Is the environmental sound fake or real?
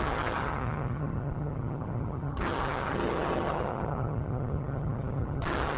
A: fake